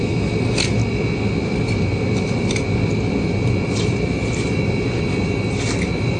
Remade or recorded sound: recorded